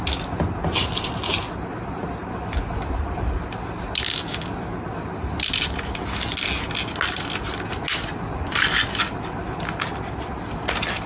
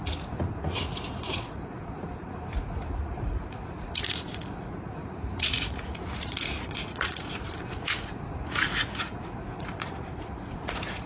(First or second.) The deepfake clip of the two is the second